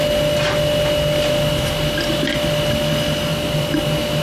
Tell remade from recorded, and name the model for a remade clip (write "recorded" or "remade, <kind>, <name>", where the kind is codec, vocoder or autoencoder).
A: recorded